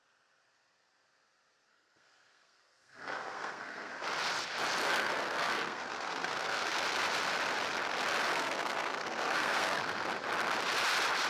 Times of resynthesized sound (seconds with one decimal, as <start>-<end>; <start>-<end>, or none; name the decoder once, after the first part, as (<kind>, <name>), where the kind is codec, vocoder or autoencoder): 1.7-3.9 (codec, SNAC); 4.8-6.8; 8.3-9.8